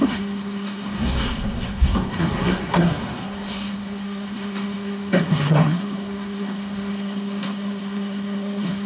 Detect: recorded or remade remade